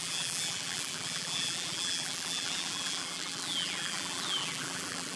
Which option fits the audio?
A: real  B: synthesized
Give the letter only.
B